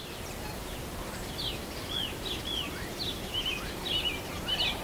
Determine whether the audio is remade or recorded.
recorded